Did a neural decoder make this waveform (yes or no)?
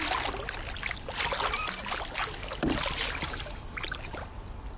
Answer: no